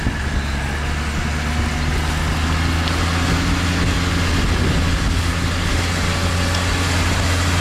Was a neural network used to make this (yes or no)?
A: no